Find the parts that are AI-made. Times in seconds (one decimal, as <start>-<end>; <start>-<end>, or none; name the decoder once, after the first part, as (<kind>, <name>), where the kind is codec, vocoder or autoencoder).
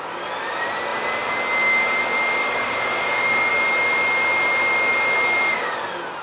2.4-3.5 (codec, DAC)